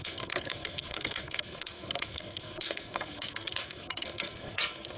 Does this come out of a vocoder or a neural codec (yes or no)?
yes